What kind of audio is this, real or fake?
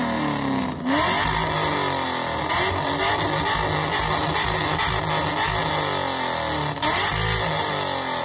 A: real